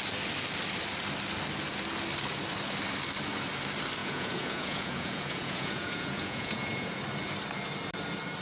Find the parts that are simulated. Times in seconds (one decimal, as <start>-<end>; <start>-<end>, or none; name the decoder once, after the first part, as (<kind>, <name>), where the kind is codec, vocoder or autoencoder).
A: 4.0-7.0 (vocoder, Vocos)